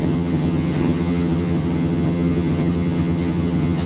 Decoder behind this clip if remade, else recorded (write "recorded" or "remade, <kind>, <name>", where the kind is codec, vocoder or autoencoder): remade, vocoder, HiFi-GAN